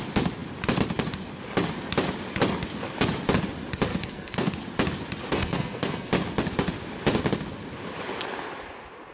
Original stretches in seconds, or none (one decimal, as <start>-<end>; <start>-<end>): 0.0-3.9; 4.5-5.3; 6.1-9.1